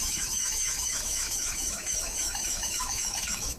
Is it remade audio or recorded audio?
remade